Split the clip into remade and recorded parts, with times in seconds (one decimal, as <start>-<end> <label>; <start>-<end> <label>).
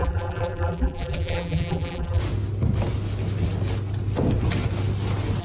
0.0-2.2 remade; 2.2-5.4 recorded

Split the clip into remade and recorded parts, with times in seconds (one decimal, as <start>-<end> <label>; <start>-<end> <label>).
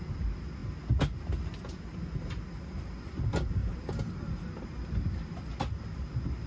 0.0-3.6 recorded; 3.6-5.1 remade; 5.1-6.5 recorded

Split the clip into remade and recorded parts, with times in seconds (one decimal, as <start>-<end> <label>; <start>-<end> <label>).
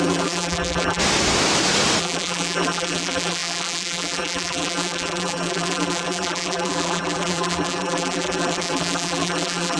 0.0-1.0 remade; 1.0-2.0 recorded; 2.0-9.8 remade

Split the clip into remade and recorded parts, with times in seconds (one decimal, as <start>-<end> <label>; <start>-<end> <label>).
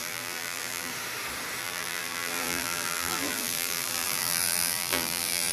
0.0-0.9 remade; 0.9-1.6 recorded; 1.6-5.5 remade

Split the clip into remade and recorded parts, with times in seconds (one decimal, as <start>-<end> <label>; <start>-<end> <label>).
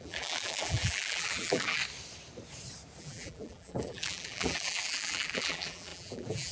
0.0-1.8 remade; 1.8-3.0 recorded; 3.0-6.5 remade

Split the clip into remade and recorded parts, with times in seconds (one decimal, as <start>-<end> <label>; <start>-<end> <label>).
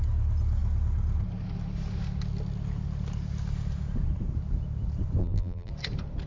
0.0-5.2 recorded; 5.2-5.7 remade; 5.7-6.3 recorded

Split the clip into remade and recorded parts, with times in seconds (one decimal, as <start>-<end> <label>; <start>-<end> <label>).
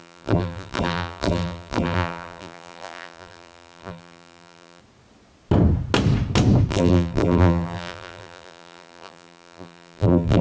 0.0-4.8 remade; 4.8-6.7 recorded; 6.7-10.4 remade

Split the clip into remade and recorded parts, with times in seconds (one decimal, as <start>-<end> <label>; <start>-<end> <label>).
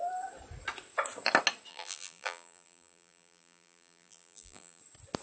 0.0-1.7 recorded; 1.7-4.8 remade; 4.8-5.2 recorded